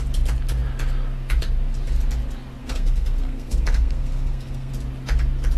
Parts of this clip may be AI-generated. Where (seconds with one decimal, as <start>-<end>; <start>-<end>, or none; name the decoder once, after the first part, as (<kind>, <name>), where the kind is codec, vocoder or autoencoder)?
2.6-4.7 (codec, SNAC)